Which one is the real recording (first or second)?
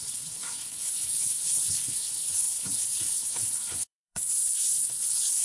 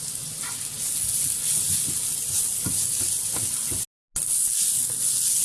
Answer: second